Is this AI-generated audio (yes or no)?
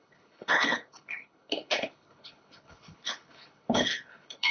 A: yes